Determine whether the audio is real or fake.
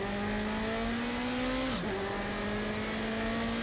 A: real